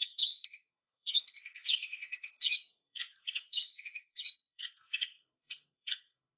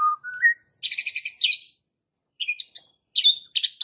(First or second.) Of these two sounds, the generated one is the first